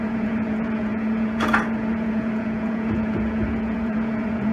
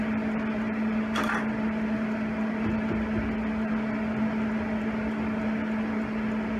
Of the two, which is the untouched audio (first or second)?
second